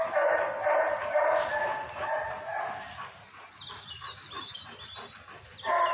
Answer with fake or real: real